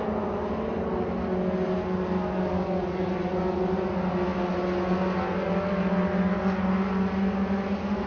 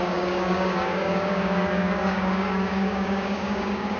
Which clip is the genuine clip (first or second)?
first